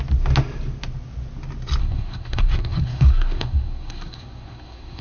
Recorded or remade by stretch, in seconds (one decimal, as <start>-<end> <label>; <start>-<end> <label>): 0.0-1.8 recorded; 1.8-5.0 remade